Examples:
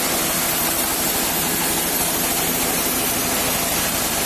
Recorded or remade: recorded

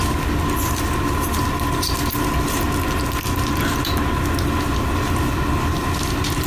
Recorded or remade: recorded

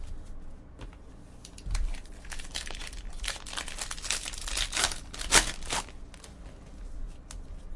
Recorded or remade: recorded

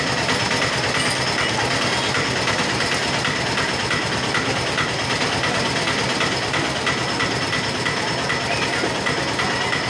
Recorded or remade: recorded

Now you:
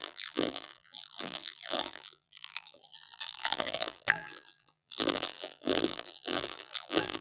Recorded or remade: remade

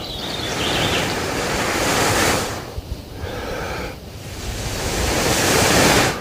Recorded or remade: remade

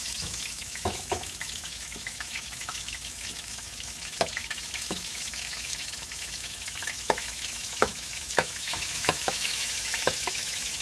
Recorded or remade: remade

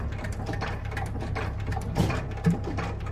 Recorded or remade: recorded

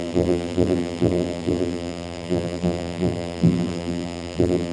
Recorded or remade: remade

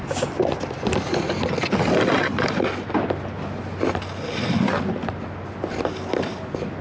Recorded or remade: recorded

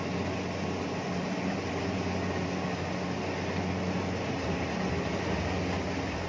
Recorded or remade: recorded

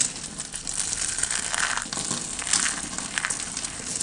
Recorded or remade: recorded